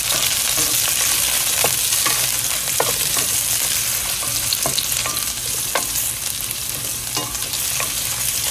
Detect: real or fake real